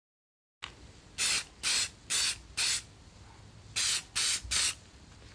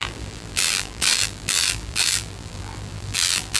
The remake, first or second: second